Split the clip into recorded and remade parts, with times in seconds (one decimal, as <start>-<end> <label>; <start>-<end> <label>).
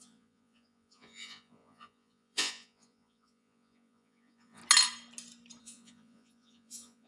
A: 0.0-4.6 remade; 4.6-5.6 recorded; 5.6-7.1 remade